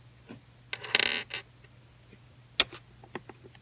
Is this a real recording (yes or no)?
yes